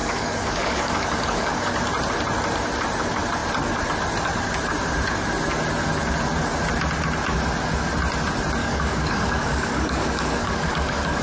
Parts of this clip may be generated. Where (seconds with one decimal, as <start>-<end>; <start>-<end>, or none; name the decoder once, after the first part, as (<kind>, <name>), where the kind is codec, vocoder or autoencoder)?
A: 0.0-1.7 (codec, DAC); 8.6-11.2